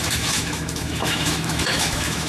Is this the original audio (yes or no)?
no